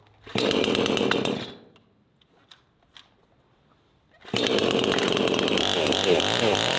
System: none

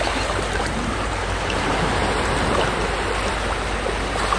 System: vocoder, BigVGAN v2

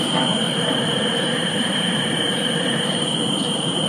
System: vocoder, BigVGAN v2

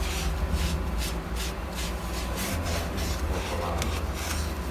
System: none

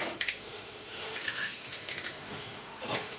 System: autoencoder, DAC-VAE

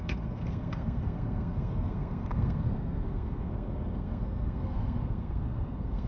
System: codec, SNAC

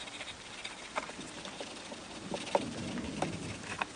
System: none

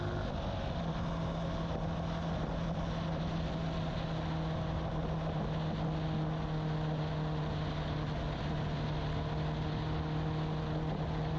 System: none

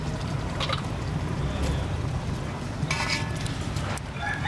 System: none